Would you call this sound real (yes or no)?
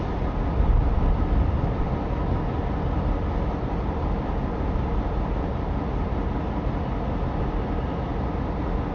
yes